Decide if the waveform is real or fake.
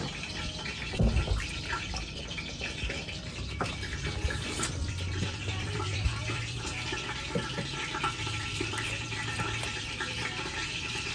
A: fake